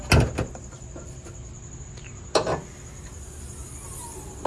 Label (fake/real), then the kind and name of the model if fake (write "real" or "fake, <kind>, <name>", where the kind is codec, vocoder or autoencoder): real